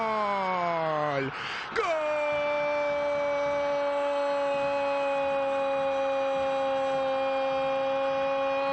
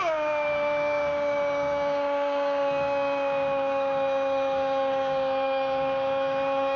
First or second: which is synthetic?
second